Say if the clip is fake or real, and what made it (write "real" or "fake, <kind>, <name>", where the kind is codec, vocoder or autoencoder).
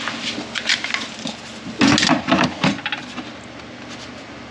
real